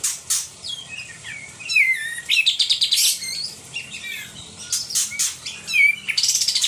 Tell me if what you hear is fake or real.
fake